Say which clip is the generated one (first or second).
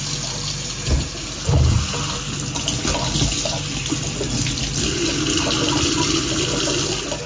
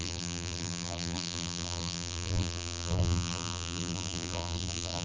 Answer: second